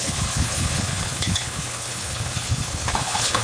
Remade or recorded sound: remade